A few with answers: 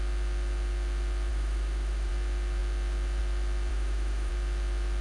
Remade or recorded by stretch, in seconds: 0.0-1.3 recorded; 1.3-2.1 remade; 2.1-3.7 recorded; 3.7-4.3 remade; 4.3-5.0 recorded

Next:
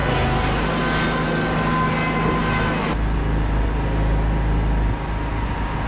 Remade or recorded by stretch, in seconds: 0.0-5.9 recorded

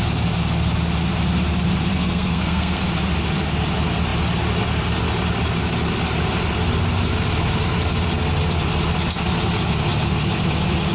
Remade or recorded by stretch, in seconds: 0.0-1.9 recorded; 1.9-2.8 remade; 2.8-10.9 recorded

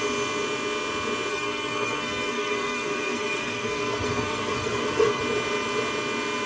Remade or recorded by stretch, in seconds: 0.0-1.3 recorded; 1.3-5.2 remade; 5.2-6.5 recorded

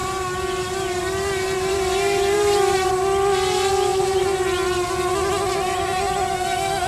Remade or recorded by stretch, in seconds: 0.0-2.9 remade; 2.9-6.9 recorded

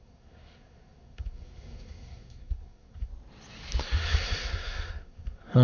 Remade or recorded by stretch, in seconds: 0.0-3.1 remade; 3.1-4.0 recorded; 4.0-5.6 remade